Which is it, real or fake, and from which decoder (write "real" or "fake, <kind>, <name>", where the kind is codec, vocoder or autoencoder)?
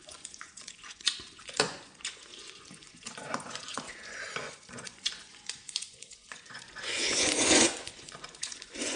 fake, vocoder, Vocos